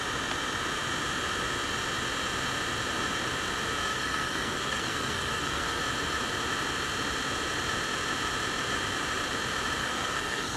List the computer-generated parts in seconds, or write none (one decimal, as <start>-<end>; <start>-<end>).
3.9-5.8; 9.8-10.6